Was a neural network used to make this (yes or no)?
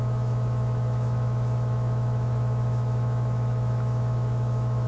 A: yes